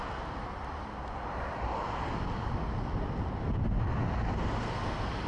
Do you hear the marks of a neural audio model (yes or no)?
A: no